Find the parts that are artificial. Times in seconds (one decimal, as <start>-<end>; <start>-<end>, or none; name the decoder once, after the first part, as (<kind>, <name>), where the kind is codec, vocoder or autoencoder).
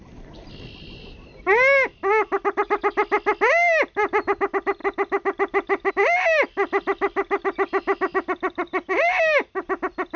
none